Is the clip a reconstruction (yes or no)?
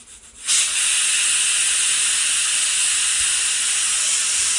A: no